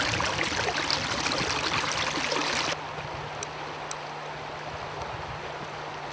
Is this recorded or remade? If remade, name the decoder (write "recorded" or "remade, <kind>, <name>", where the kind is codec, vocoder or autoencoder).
recorded